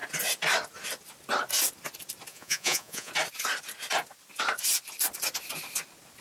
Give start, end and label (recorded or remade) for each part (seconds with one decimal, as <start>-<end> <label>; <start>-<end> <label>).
0.0-2.3 recorded; 2.3-3.1 remade; 3.1-6.2 recorded